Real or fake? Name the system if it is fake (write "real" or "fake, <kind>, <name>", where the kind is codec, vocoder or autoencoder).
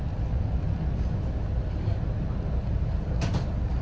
real